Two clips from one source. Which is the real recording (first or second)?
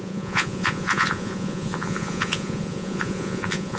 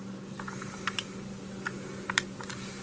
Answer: second